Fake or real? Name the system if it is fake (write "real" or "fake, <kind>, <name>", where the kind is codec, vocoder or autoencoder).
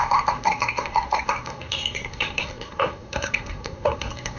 fake, codec, SNAC